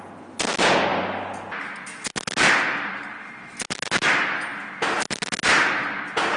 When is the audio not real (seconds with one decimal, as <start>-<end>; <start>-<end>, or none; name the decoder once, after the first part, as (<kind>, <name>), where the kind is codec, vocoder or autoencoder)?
none

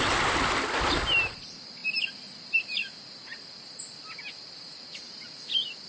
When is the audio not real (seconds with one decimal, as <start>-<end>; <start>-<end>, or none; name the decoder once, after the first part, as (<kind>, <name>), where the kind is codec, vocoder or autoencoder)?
none